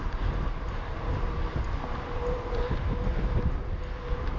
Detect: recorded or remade recorded